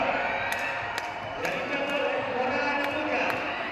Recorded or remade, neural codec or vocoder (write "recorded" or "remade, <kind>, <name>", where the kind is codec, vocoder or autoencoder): recorded